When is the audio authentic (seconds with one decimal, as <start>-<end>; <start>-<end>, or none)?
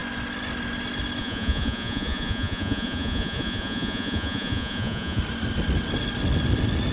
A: 0.0-1.2; 5.2-6.9